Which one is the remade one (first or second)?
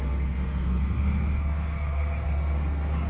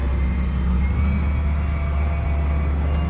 first